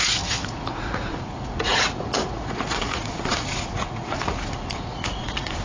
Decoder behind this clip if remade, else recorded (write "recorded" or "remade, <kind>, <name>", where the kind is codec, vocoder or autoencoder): remade, vocoder, Vocos